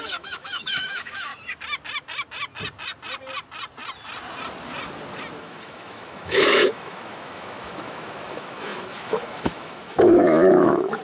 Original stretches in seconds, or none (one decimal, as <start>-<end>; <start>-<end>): 1.3-5.4